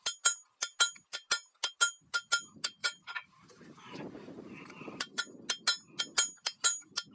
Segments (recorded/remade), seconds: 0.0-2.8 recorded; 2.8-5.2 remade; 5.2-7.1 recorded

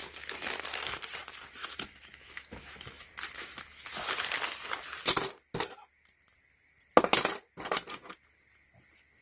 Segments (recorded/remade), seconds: 0.0-1.6 recorded; 1.6-3.1 remade; 3.1-9.2 recorded

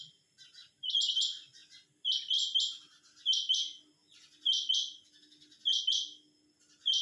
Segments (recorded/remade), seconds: 0.0-7.0 recorded

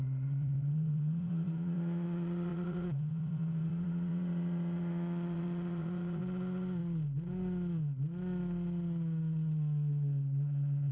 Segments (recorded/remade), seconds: 0.0-6.2 remade; 6.2-10.9 recorded